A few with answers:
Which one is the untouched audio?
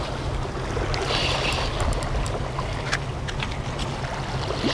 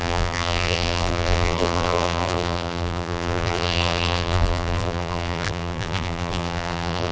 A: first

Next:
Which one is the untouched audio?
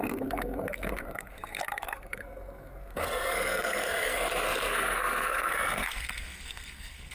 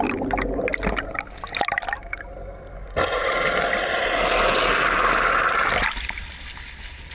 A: second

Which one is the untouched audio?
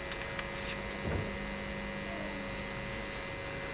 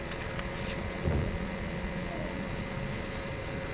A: first